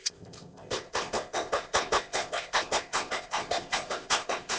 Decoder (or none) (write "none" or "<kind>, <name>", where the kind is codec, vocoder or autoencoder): codec, ZipCodec